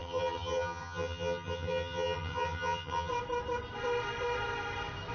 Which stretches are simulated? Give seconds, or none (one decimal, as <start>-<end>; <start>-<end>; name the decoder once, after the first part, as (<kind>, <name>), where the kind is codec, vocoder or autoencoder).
0.0-3.1 (vocoder, HiFi-GAN)